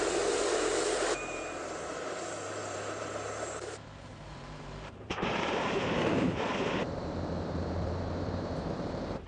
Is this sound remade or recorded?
remade